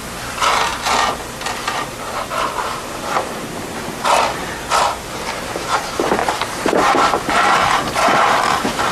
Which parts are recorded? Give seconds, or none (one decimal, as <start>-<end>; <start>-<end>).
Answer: 0.0-6.2; 8.1-8.9